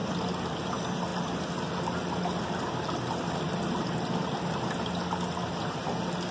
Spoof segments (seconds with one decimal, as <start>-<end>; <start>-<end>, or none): 1.1-4.9